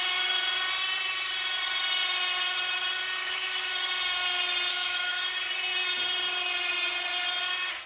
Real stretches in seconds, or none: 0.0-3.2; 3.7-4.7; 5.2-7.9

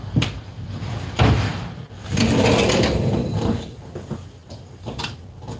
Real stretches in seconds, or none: 0.0-5.6

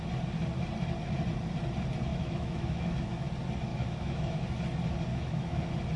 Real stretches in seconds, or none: 0.0-2.1; 3.3-3.7; 4.6-5.1; 5.6-6.0